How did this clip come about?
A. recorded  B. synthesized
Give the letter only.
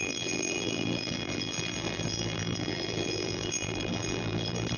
B